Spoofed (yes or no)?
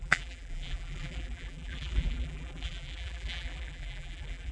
yes